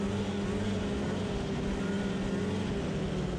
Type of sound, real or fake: real